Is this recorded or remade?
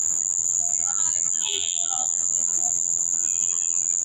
remade